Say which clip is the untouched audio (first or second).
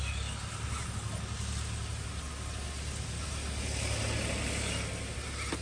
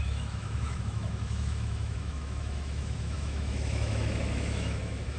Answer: first